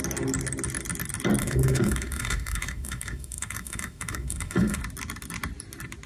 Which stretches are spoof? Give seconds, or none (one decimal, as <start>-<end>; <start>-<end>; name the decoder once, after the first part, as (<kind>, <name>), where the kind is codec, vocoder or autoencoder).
1.4-4.8 (autoencoder, DAC-VAE)